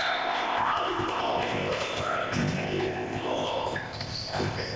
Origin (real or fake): fake